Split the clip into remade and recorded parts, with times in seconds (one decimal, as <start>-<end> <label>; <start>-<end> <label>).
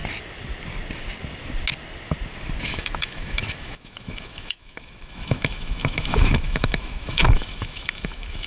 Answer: 0.0-2.6 recorded; 2.6-8.5 remade